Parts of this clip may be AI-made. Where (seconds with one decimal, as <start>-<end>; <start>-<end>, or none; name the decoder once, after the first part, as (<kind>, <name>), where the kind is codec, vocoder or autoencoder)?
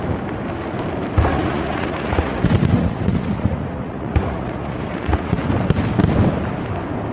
1.3-5.4 (vocoder, Vocos)